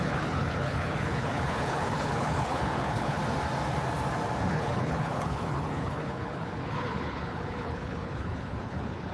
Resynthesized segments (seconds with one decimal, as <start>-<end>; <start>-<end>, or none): 0.0-3.2; 4.5-9.1